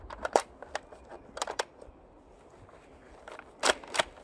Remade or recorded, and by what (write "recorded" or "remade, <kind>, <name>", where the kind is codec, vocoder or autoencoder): recorded